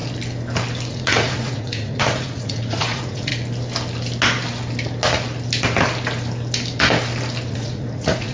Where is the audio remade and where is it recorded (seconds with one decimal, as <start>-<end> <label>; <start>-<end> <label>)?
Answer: 0.0-0.9 recorded; 0.9-3.3 remade; 3.3-7.5 recorded; 7.5-8.3 remade